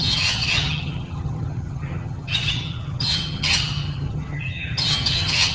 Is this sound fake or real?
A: fake